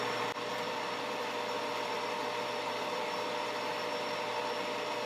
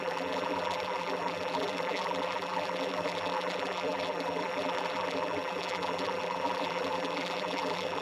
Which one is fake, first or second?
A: second